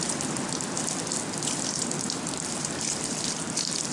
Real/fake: real